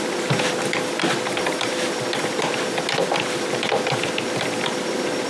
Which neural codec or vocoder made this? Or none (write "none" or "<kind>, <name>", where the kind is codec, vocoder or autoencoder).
vocoder, BigVGAN v2